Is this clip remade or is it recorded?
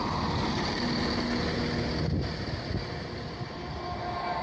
recorded